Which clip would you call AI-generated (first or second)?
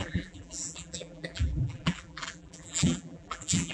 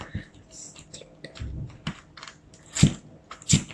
first